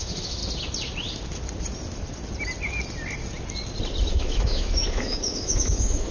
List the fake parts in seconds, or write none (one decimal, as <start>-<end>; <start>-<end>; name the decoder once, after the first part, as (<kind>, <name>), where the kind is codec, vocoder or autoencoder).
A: 0.0-0.4 (autoencoder, DAC-VAE); 4.1-6.1